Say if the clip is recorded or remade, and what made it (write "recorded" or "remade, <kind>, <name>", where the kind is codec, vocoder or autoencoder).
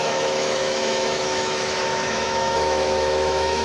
remade, autoencoder, DAC-VAE